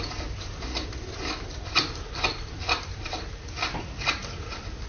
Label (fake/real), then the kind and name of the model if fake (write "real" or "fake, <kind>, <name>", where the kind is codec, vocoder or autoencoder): real